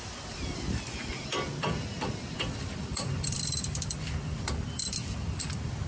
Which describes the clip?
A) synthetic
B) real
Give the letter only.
A